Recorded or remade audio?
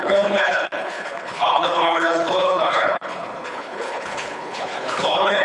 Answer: remade